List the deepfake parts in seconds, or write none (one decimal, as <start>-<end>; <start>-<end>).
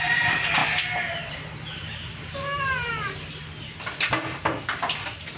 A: none